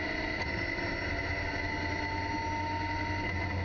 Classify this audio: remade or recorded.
recorded